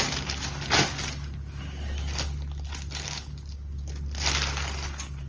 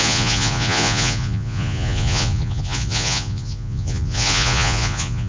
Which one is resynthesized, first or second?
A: second